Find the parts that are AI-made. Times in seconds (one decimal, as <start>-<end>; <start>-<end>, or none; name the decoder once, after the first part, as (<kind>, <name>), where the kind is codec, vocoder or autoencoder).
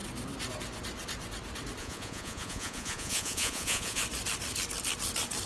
1.8-4.0 (vocoder, Vocos)